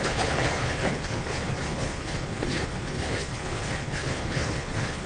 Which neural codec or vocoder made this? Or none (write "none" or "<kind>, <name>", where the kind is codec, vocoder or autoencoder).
codec, HILCodec